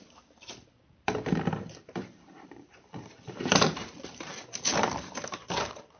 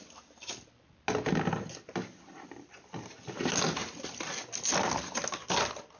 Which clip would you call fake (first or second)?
first